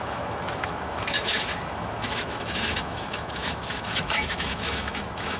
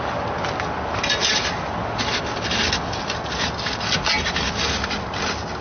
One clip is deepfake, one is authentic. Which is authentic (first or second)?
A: second